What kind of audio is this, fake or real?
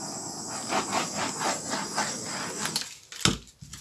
real